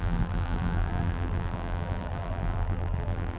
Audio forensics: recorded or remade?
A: remade